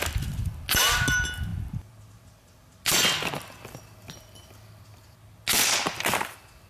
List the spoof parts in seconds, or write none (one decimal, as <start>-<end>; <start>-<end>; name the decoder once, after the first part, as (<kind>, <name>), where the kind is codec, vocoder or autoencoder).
1.5-2.8 (vocoder, BigVGAN v2)